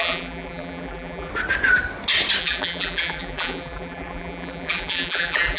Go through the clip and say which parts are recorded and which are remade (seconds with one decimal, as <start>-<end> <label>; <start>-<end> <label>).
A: 0.0-1.3 remade; 1.3-2.4 recorded; 2.4-5.6 remade